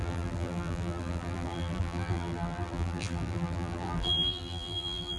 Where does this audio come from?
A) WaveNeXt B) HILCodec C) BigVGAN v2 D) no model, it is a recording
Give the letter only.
C